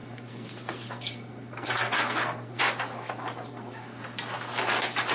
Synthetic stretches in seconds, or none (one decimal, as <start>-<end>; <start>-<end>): 0.0-2.6; 3.5-4.0